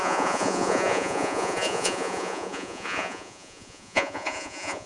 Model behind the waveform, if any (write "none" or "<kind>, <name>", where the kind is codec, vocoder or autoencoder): vocoder, Vocos